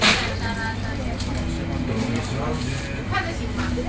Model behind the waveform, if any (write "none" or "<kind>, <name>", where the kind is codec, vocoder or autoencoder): none